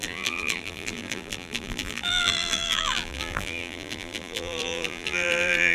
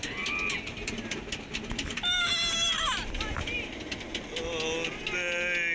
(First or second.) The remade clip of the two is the first